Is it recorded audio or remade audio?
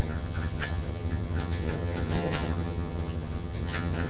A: remade